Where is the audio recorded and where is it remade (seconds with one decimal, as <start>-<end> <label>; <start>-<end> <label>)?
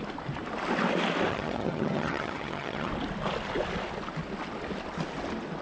0.0-1.3 recorded; 1.3-2.9 remade; 2.9-5.6 recorded